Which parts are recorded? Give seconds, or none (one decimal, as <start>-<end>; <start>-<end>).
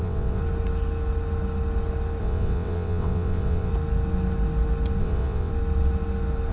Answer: 0.4-2.2; 3.7-5.0; 5.5-6.5